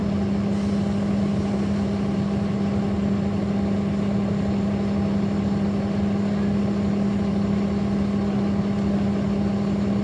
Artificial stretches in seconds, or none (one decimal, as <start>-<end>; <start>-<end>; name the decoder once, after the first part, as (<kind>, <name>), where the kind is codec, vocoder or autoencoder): none